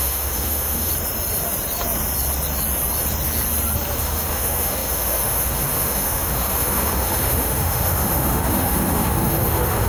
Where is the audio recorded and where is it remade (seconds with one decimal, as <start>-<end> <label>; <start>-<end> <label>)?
0.0-0.9 remade; 0.9-4.0 recorded; 4.0-9.9 remade